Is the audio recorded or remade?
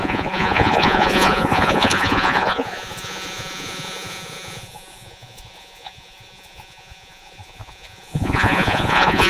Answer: remade